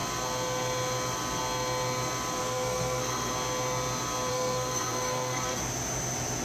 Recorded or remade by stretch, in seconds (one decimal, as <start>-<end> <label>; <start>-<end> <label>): 0.0-2.4 recorded; 2.4-3.3 remade; 3.3-4.3 recorded; 4.3-5.6 remade; 5.6-6.4 recorded